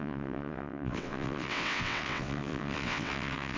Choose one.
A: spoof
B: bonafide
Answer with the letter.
A